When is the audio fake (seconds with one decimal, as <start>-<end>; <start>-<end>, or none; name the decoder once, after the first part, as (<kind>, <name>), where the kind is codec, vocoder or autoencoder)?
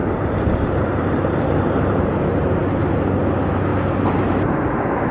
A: 0.0-2.0 (vocoder, BigVGAN v2)